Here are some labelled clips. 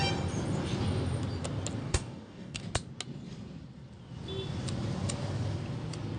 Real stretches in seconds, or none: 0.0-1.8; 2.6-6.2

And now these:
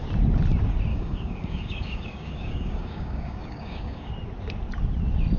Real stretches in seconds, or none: 0.0-0.9; 4.1-5.4

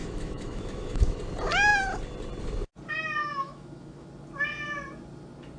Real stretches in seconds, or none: 1.2-3.2; 4.1-5.6